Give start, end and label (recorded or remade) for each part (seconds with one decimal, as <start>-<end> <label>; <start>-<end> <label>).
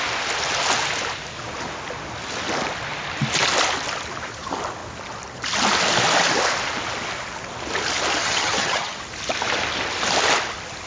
0.0-8.2 recorded; 8.2-9.0 remade; 9.0-10.9 recorded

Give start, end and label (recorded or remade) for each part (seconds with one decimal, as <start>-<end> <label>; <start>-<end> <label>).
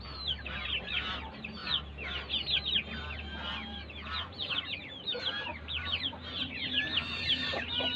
0.0-1.6 remade; 1.6-4.6 recorded; 4.6-8.0 remade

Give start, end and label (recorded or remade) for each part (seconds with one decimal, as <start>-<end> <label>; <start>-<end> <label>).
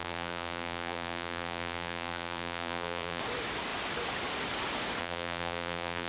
0.0-3.2 remade; 3.2-5.0 recorded; 5.0-6.1 remade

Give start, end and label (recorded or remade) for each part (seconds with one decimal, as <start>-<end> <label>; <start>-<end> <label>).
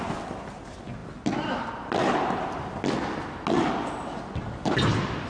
0.0-5.3 recorded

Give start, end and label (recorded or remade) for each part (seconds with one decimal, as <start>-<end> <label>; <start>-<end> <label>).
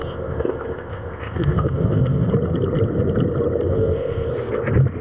0.0-2.3 remade; 2.3-3.7 recorded; 3.7-4.3 remade; 4.3-5.0 recorded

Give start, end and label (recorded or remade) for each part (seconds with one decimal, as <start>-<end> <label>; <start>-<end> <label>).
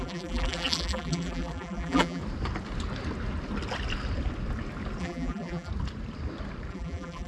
0.0-2.2 remade; 2.2-5.0 recorded; 5.0-5.7 remade; 5.7-6.7 recorded; 6.7-7.3 remade